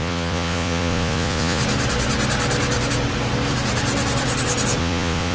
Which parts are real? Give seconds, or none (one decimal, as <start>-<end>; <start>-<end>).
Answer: 1.6-4.8